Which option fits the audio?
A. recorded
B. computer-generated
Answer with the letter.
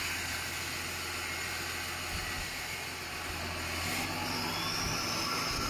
A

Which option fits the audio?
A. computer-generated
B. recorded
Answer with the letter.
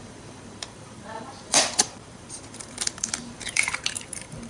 A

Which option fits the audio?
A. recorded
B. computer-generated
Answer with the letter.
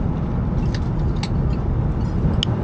A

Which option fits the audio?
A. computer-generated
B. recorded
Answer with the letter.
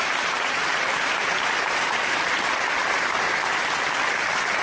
B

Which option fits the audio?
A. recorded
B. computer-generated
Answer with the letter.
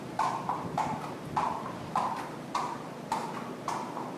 B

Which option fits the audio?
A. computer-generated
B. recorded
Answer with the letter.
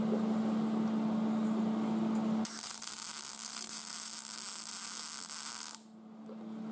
B